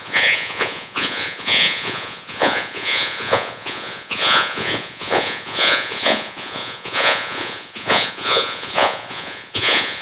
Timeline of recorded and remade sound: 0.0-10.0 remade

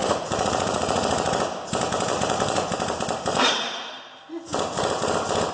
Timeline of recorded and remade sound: 0.0-1.4 remade; 1.4-2.1 recorded; 2.1-2.7 remade; 2.7-3.3 recorded; 3.3-3.9 remade; 3.9-5.5 recorded

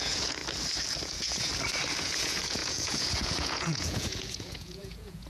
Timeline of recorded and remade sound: 0.0-0.4 remade; 0.4-1.0 recorded; 1.0-1.5 remade; 1.5-2.0 recorded; 2.0-5.3 remade